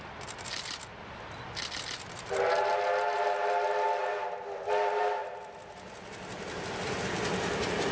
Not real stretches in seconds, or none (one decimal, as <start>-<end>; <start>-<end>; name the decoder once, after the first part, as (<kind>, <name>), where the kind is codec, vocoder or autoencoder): none